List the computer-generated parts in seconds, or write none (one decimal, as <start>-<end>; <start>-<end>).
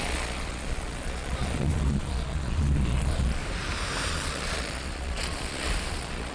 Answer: 0.0-3.4; 4.1-6.3